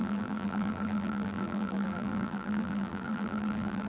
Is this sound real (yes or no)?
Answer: no